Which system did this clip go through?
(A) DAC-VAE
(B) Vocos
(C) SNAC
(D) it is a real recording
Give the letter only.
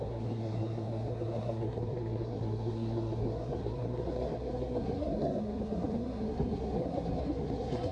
C